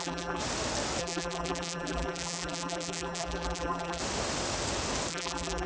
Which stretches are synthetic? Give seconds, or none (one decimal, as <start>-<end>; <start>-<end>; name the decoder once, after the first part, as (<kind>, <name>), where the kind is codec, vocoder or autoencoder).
0.0-0.4 (vocoder, BigVGAN v2); 1.0-4.0; 5.1-5.7